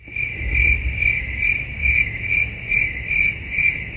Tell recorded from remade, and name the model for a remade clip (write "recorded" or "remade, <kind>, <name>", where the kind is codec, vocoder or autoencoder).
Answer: recorded